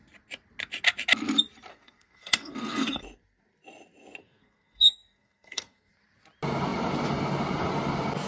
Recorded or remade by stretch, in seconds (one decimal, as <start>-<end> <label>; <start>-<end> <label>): 0.0-1.7 recorded; 1.7-3.0 remade; 3.0-4.2 recorded; 4.2-5.9 remade; 5.9-8.3 recorded

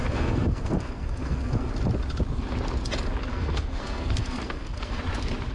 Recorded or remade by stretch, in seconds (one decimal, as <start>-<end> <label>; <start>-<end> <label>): 0.0-1.7 remade; 1.7-3.3 recorded; 3.3-5.0 remade; 5.0-5.5 recorded

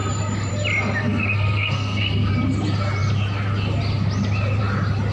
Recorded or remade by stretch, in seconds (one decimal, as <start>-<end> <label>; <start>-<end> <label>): 0.0-1.0 recorded; 1.0-2.3 remade; 2.3-5.1 recorded

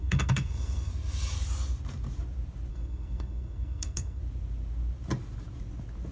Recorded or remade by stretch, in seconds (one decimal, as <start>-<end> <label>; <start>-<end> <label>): 0.0-0.9 remade; 0.9-2.7 recorded; 2.7-4.2 remade; 4.2-6.1 recorded

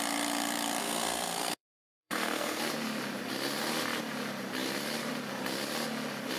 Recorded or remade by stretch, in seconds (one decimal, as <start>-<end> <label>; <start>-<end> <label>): 0.0-0.8 recorded; 0.8-2.6 remade; 2.6-6.4 recorded

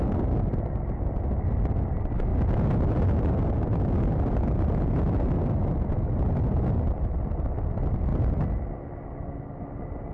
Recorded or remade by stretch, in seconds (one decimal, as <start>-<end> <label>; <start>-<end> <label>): 0.0-10.1 recorded

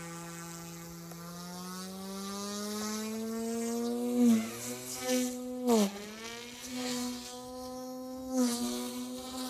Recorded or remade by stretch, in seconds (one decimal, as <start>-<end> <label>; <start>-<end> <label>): 0.0-6.7 recorded; 6.7-8.9 remade; 8.9-9.5 recorded